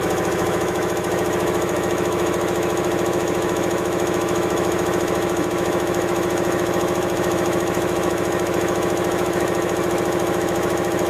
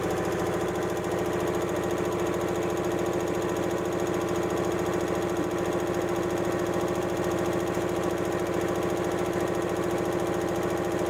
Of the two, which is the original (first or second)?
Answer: second